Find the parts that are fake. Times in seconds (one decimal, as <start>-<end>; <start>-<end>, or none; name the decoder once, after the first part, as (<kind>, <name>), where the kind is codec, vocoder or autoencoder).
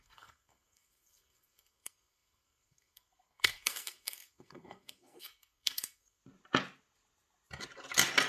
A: 0.0-6.2 (codec, SNAC)